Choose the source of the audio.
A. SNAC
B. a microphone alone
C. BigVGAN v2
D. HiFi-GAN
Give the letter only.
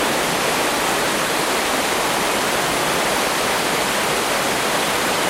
C